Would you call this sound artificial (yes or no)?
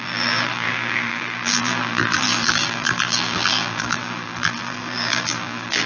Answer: yes